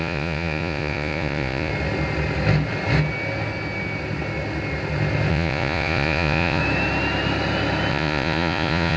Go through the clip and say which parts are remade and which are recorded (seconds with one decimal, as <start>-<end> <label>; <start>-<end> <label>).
0.0-1.7 remade; 1.7-5.3 recorded; 5.3-6.6 remade; 6.6-7.9 recorded; 7.9-9.0 remade